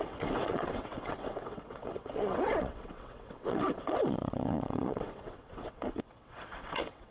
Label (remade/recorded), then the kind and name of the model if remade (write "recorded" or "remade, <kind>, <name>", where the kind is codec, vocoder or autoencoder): remade, vocoder, WaveNeXt